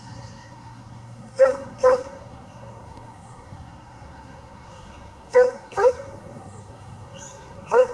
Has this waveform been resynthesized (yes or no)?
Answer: yes